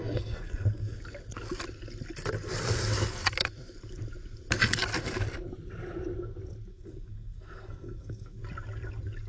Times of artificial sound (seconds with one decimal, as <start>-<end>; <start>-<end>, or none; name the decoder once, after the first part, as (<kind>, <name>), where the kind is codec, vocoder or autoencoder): 0.0-1.0 (codec, SNAC); 6.7-8.4